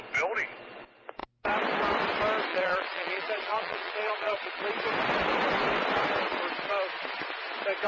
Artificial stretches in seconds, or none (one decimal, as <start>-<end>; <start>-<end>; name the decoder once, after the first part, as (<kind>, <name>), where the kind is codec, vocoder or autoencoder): 2.5-4.6 (vocoder, Vocos)